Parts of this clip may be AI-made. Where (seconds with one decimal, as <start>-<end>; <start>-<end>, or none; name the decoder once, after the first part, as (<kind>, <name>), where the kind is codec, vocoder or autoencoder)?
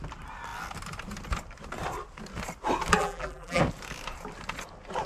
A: 3.0-3.6 (vocoder, BigVGAN v2)